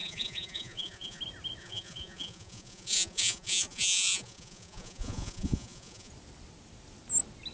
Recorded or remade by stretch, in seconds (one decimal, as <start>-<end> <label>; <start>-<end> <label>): 0.0-1.2 remade; 1.2-1.6 recorded; 1.6-6.1 remade; 6.1-7.5 recorded